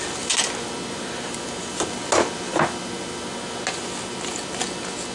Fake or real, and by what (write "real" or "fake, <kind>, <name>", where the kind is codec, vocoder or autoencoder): real